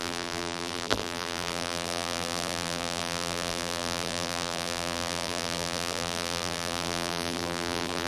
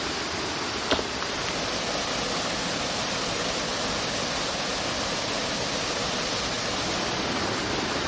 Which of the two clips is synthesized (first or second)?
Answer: first